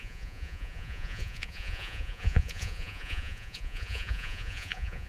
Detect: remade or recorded remade